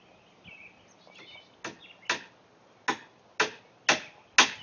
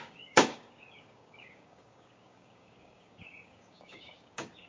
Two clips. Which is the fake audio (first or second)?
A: second